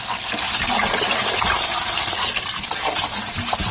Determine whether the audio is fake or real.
real